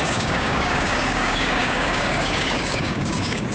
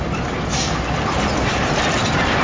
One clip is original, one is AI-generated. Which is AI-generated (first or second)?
first